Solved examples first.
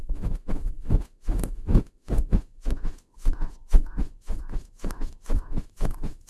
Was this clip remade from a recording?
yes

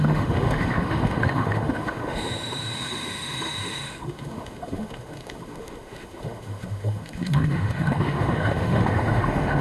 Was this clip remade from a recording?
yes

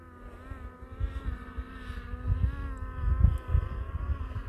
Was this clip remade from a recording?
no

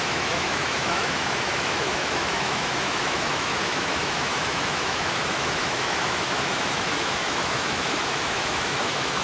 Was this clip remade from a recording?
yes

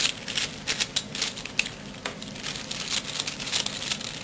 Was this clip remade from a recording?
no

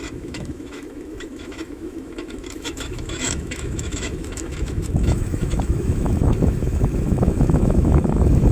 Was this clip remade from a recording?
yes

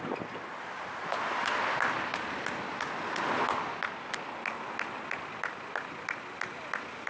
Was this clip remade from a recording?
no